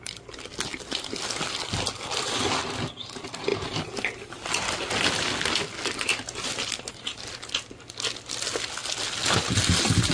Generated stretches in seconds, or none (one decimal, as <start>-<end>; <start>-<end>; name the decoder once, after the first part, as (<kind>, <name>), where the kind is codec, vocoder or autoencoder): none